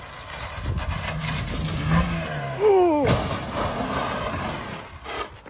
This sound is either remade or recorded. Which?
recorded